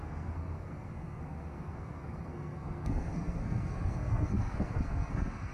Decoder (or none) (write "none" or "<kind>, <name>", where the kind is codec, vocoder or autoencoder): codec, SNAC